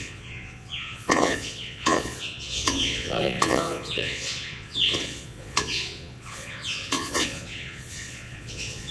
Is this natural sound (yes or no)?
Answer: no